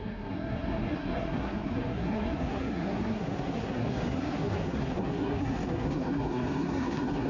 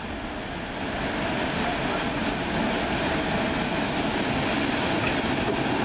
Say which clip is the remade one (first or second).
first